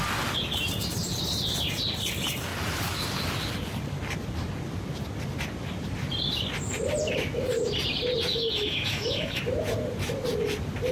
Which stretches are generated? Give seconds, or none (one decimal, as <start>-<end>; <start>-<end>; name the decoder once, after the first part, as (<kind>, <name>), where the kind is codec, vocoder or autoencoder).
8.3-9.4 (autoencoder, DAC-VAE)